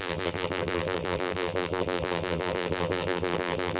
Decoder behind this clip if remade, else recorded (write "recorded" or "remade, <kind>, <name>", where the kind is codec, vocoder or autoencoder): remade, vocoder, BigVGAN v2